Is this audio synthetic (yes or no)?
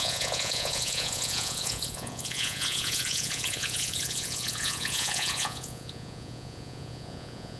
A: yes